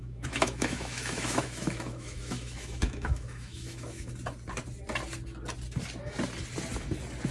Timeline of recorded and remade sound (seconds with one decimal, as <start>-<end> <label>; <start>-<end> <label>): 0.0-4.1 remade; 4.1-7.3 recorded